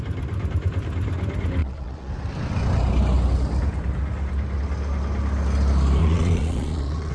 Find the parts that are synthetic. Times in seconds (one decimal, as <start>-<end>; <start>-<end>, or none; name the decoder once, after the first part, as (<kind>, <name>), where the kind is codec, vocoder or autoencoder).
1.6-2.1 (vocoder, Vocos); 6.0-7.1